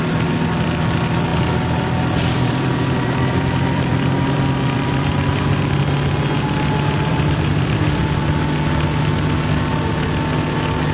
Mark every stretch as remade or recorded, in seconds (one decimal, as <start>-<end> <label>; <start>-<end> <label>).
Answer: 0.0-1.3 recorded; 1.3-5.7 remade; 5.7-7.1 recorded; 7.1-8.0 remade; 8.0-10.9 recorded